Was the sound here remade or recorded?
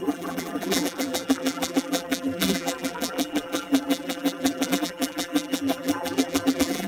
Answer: remade